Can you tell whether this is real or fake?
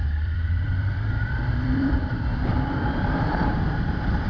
fake